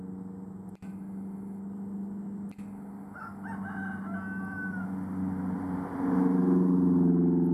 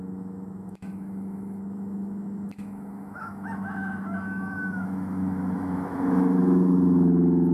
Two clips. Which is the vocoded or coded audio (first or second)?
second